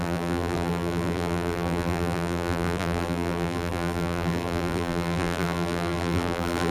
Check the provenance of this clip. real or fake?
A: fake